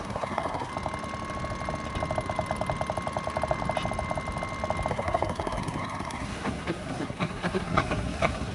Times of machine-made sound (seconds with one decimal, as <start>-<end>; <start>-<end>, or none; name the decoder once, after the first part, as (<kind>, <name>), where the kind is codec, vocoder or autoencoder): 0.0-0.7 (codec, SNAC); 4.9-8.5

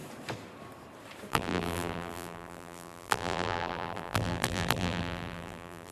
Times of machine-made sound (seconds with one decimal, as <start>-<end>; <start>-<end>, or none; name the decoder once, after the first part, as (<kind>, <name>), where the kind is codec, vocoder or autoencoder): 1.3-5.9 (vocoder, BigVGAN v2)